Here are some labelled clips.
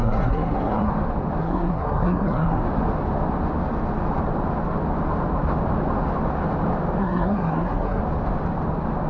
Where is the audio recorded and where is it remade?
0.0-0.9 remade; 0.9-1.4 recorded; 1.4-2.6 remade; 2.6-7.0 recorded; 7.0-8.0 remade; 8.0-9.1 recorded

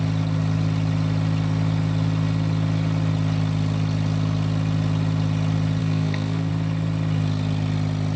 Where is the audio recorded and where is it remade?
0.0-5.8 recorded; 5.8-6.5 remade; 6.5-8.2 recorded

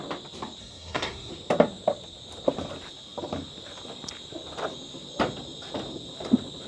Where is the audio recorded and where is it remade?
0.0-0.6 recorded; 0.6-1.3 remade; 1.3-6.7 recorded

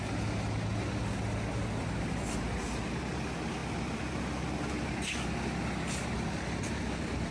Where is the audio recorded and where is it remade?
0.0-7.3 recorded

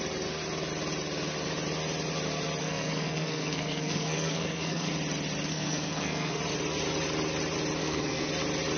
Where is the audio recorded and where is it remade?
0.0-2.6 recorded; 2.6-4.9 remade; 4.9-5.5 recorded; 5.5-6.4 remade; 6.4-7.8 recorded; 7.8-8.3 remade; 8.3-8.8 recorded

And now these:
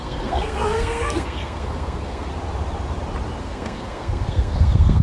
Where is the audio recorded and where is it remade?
0.0-2.3 remade; 2.3-3.4 recorded; 3.4-5.0 remade

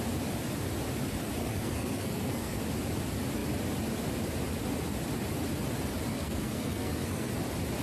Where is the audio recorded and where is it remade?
0.0-1.4 recorded; 1.4-2.6 remade; 2.6-6.1 recorded; 6.1-7.3 remade; 7.3-7.8 recorded

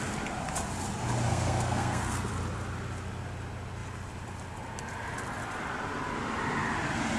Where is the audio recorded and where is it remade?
0.0-1.3 recorded; 1.3-2.3 remade; 2.3-7.2 recorded